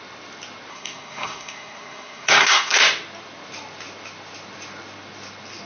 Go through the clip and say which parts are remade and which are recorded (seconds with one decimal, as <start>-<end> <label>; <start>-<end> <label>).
0.0-0.7 recorded; 0.7-2.8 remade; 2.8-5.7 recorded